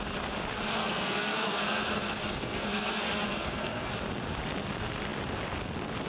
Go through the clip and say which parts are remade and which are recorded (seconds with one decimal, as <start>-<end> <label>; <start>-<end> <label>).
0.0-0.8 recorded; 0.8-3.9 remade; 3.9-6.1 recorded